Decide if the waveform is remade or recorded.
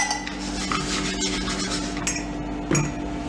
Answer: recorded